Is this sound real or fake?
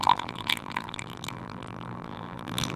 fake